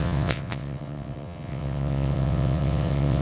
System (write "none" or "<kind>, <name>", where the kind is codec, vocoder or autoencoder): vocoder, WaveNeXt